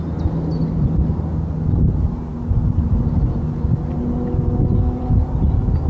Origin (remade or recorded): recorded